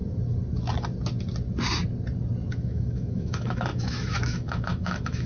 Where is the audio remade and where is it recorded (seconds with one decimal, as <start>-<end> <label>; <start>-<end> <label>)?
0.0-2.5 recorded; 2.5-5.3 remade